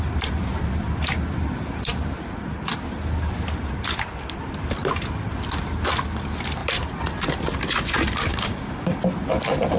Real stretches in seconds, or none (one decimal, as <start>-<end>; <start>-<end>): 0.0-8.3; 9.0-9.8